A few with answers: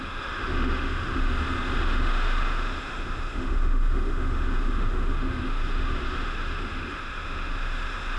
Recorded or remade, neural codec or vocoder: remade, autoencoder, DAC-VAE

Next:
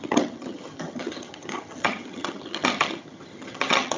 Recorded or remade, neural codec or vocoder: remade, vocoder, HiFi-GAN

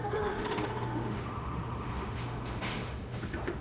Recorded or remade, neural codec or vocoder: remade, autoencoder, DAC-VAE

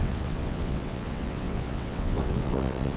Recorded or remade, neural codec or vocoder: remade, vocoder, WaveNeXt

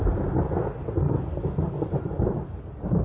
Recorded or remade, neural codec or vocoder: recorded